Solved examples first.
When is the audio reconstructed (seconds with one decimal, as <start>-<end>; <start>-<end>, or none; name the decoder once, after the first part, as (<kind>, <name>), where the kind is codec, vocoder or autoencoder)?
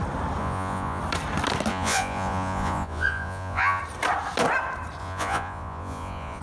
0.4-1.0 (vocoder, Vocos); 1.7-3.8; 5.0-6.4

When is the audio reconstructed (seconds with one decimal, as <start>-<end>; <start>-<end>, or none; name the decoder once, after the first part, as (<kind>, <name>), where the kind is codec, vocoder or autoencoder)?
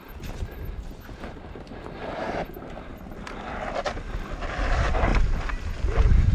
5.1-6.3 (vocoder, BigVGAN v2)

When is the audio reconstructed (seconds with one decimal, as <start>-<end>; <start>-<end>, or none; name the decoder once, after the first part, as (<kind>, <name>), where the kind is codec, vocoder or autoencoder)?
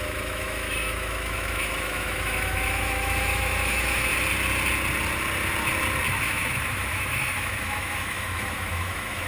0.0-4.1 (autoencoder, DAC-VAE); 6.1-9.3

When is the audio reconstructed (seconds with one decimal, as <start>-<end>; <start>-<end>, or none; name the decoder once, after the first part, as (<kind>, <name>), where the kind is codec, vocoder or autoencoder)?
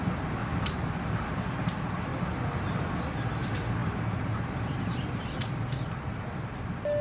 0.4-1.4 (vocoder, BigVGAN v2); 3.8-5.5